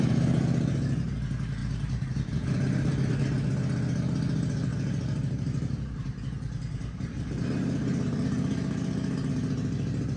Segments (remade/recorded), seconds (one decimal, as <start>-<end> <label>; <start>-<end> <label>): 0.0-1.6 recorded; 1.6-3.1 remade; 3.1-4.7 recorded; 4.7-9.3 remade; 9.3-10.2 recorded